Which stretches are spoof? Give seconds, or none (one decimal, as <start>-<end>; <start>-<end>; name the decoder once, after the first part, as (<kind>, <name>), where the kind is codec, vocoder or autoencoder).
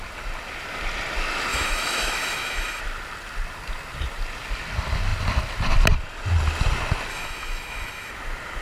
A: 1.5-2.8 (autoencoder, DAC-VAE); 7.1-8.1